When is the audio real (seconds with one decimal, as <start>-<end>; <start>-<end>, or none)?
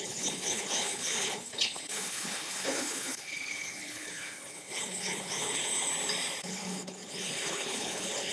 5.9-6.4